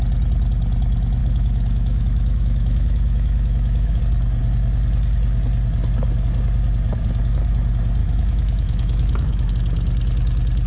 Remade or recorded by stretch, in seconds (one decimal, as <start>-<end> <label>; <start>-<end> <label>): 0.0-1.2 recorded; 1.2-4.0 remade; 4.0-8.0 recorded; 8.0-9.5 remade; 9.5-10.7 recorded

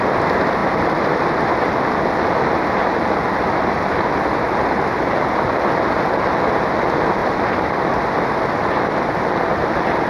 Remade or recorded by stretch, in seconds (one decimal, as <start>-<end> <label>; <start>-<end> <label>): 0.0-10.1 recorded

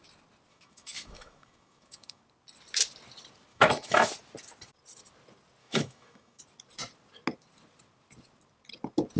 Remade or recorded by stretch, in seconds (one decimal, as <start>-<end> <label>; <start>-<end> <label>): 0.0-0.5 recorded; 0.5-2.2 remade; 2.2-3.5 recorded; 3.5-4.1 remade; 4.1-5.6 recorded; 5.6-6.4 remade; 6.4-9.2 recorded

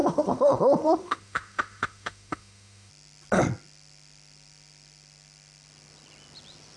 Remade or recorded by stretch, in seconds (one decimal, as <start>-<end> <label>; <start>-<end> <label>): 0.0-2.9 remade; 2.9-6.8 recorded

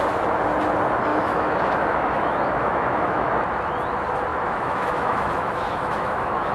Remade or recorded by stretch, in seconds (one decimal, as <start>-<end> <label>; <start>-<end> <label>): 0.0-1.1 recorded; 1.1-3.3 remade; 3.3-4.3 recorded; 4.3-6.5 remade

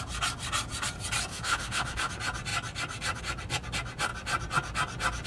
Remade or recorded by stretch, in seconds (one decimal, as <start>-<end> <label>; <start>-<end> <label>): 0.0-1.3 recorded; 1.3-2.1 remade; 2.1-5.3 recorded